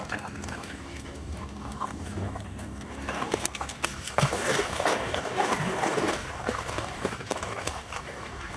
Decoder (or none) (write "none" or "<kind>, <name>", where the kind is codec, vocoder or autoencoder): codec, DAC